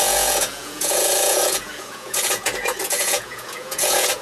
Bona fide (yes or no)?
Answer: no